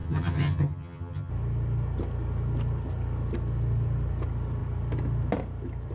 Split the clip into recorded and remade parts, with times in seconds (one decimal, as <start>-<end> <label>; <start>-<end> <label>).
0.0-1.3 remade; 1.3-5.9 recorded